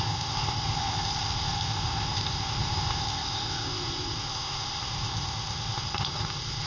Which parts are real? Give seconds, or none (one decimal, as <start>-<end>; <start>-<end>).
none